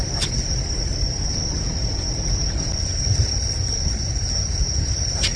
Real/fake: real